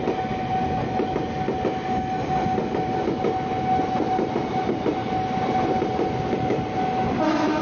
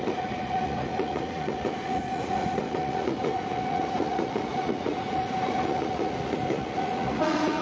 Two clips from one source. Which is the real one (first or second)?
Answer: first